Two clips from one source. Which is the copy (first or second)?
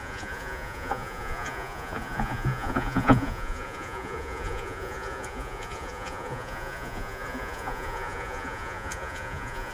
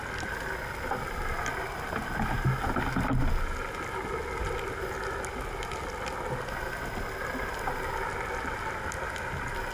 first